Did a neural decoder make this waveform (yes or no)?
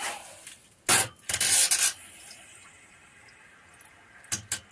no